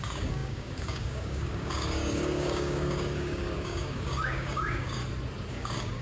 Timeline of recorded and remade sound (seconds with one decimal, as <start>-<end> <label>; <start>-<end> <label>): 0.0-5.0 remade; 5.0-5.5 recorded; 5.5-6.0 remade